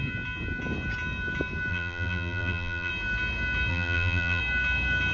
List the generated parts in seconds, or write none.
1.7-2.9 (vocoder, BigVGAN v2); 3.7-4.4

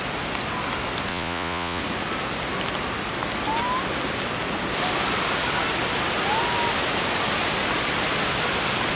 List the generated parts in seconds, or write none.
1.1-1.8 (vocoder, Vocos)

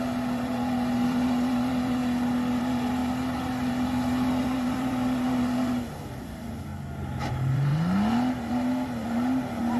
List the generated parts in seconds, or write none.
0.0-2.0 (vocoder, BigVGAN v2); 2.6-6.7; 7.3-7.7; 8.5-9.8

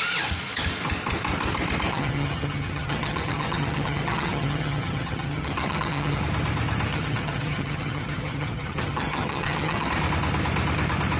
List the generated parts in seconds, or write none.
1.9-6.2 (vocoder, HiFi-GAN); 6.9-9.9

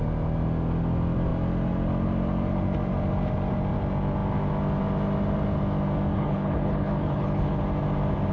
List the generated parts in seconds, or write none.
6.1-7.6 (codec, HILCodec)